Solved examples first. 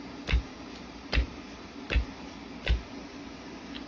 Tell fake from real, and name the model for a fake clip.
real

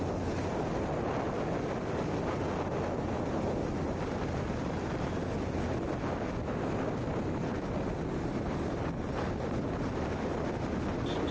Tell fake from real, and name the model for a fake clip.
real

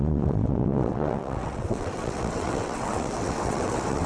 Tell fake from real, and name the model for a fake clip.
fake, vocoder, WaveNeXt